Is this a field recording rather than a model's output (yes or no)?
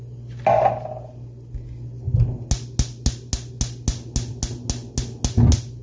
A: yes